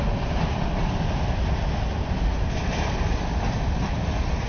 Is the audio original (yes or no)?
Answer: yes